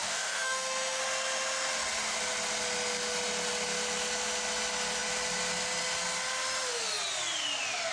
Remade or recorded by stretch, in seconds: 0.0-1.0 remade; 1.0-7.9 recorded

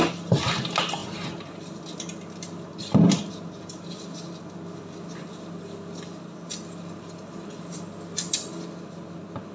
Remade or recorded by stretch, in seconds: 0.0-9.5 recorded

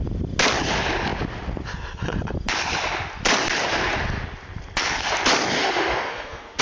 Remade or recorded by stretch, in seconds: 0.0-5.6 recorded; 5.6-6.6 remade

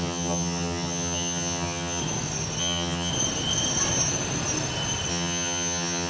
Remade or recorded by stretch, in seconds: 0.0-2.0 remade; 2.0-2.6 recorded; 2.6-3.1 remade; 3.1-5.1 recorded; 5.1-6.1 remade

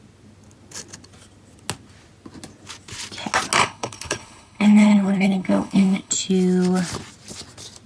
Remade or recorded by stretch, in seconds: 0.0-3.6 recorded; 3.6-6.1 remade; 6.1-7.9 recorded